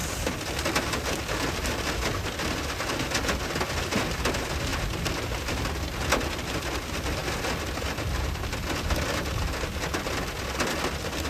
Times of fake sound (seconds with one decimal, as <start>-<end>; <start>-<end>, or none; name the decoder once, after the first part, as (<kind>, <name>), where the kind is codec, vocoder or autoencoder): 4.7-5.7 (vocoder, BigVGAN v2)